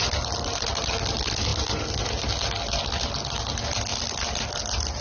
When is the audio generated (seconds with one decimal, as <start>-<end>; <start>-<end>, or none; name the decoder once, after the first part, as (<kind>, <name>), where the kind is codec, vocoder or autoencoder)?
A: none